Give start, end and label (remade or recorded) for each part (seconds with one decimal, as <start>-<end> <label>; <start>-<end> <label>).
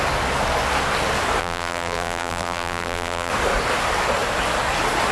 0.0-1.4 recorded; 1.4-3.3 remade; 3.3-5.1 recorded